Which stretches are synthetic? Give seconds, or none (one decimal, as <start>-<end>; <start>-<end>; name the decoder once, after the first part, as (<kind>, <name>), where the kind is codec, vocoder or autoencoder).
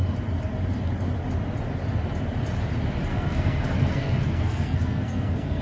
3.1-5.6 (codec, SNAC)